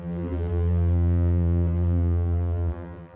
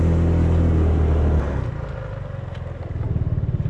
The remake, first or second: first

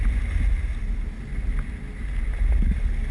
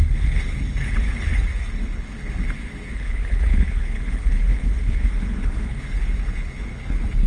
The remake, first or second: second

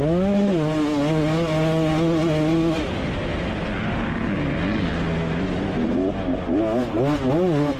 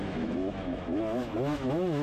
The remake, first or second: second